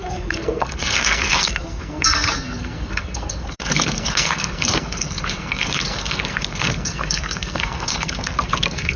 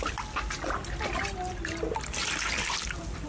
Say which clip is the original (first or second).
second